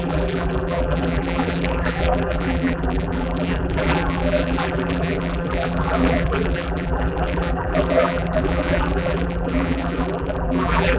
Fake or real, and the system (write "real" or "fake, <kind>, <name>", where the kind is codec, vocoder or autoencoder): fake, vocoder, BigVGAN v2